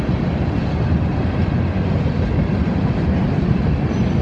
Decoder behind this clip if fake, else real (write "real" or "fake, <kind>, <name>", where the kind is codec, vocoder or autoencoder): real